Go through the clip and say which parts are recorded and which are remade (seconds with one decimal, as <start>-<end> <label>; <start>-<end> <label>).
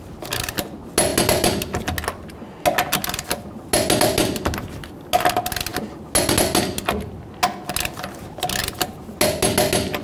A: 0.0-10.0 recorded